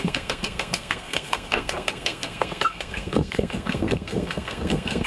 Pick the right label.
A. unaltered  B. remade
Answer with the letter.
B